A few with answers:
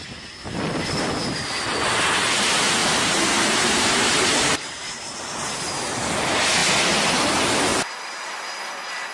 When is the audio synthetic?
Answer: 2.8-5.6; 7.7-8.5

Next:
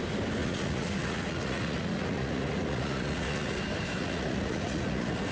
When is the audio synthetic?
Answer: 0.4-3.6; 4.0-5.3

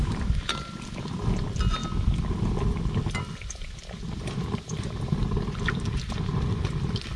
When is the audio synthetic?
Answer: none

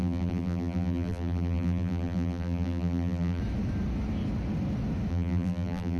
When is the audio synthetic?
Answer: 0.0-3.4; 5.1-6.0